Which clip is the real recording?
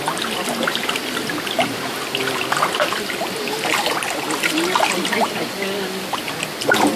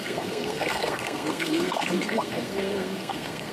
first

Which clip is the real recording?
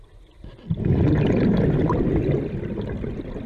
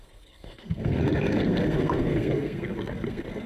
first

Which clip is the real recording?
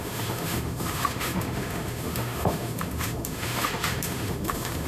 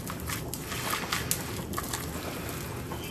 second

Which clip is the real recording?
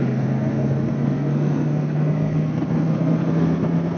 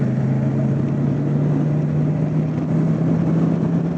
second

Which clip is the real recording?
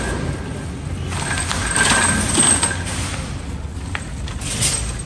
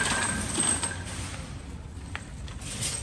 first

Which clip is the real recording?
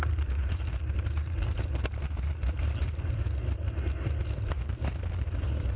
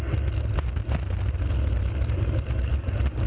second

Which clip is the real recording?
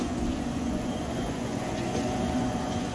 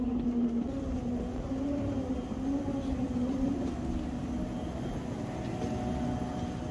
second